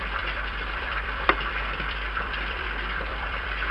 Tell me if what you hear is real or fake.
fake